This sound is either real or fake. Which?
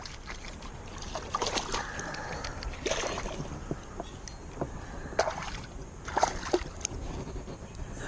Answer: real